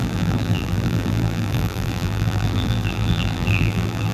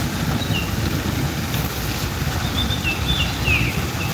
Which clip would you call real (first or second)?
second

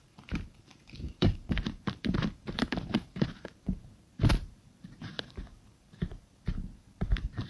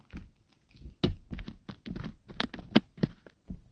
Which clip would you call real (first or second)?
second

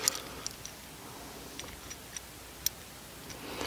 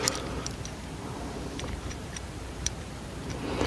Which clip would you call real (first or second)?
first